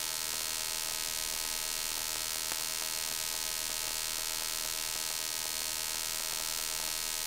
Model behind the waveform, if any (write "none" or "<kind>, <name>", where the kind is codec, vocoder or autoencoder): none